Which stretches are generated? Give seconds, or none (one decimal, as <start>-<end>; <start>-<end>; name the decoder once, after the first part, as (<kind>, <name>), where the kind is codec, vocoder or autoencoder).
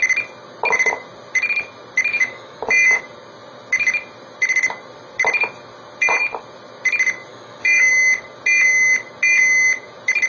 2.1-3.0 (autoencoder, DAC-VAE); 7.3-7.9